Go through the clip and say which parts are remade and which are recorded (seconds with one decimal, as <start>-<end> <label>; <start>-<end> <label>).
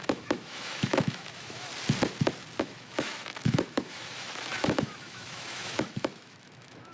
0.0-1.7 remade; 1.7-2.6 recorded; 2.6-6.9 remade